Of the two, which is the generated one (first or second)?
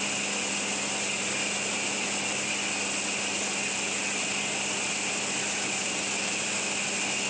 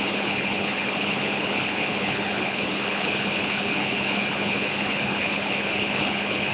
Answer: second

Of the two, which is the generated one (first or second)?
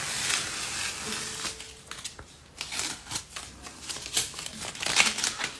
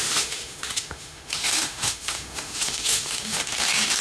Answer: second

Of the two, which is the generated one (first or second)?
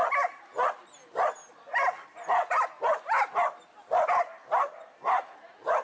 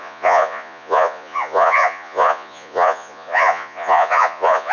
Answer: second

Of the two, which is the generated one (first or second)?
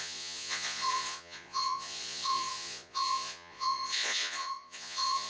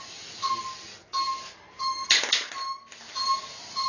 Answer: first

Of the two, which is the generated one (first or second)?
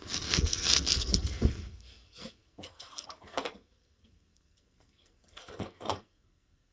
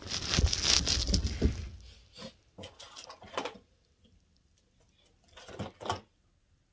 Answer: first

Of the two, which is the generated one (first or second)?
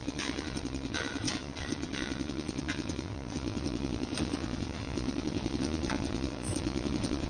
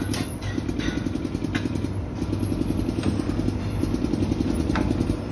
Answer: first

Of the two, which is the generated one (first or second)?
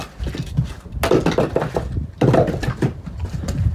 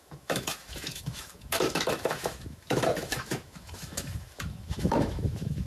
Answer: second